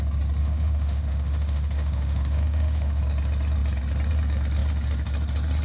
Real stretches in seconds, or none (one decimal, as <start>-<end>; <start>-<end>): 0.0-0.4; 3.0-5.6